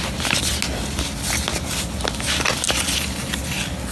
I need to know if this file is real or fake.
real